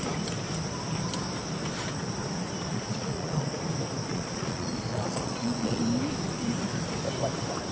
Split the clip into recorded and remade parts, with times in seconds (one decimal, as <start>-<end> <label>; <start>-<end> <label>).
0.0-2.7 recorded; 2.7-3.6 remade; 3.6-4.1 recorded; 4.1-5.8 remade; 5.8-7.7 recorded

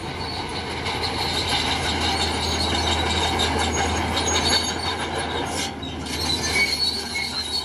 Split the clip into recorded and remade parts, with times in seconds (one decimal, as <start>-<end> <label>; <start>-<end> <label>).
0.0-7.6 recorded

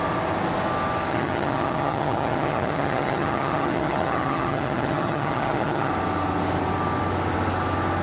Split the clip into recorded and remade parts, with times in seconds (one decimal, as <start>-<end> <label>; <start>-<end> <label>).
0.0-1.1 recorded; 1.1-5.9 remade; 5.9-8.0 recorded

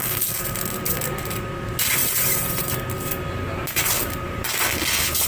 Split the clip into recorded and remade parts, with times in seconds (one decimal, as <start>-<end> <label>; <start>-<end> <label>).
0.0-5.3 recorded